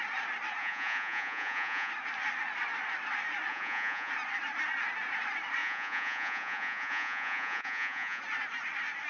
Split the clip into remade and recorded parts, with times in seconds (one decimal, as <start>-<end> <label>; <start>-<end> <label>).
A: 0.0-0.6 recorded; 0.6-1.9 remade; 1.9-3.5 recorded; 3.5-4.1 remade; 4.1-5.6 recorded; 5.6-8.2 remade; 8.2-9.1 recorded